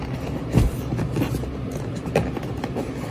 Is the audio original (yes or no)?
yes